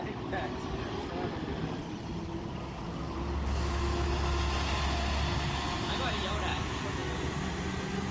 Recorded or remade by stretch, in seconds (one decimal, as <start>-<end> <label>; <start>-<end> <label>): 0.0-6.5 recorded; 6.5-7.1 remade; 7.1-8.1 recorded